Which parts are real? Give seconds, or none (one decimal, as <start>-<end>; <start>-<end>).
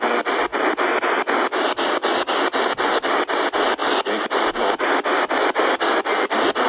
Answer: 0.0-6.7